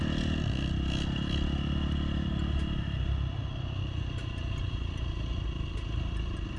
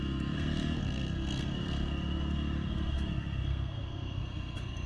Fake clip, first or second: second